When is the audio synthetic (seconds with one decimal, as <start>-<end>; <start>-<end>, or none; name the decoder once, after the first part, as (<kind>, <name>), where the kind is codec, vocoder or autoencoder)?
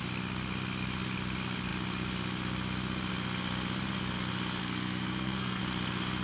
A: 4.6-5.6 (codec, SNAC)